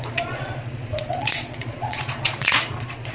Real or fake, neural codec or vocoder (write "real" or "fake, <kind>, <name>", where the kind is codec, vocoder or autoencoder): fake, vocoder, Vocos